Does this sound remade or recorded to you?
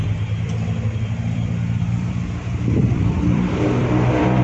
remade